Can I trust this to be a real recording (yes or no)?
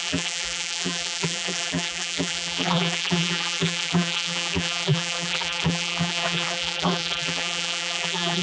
no